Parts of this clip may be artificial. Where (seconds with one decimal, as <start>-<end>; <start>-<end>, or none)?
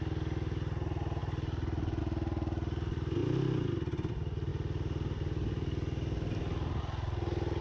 none